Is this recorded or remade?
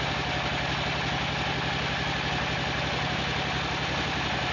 recorded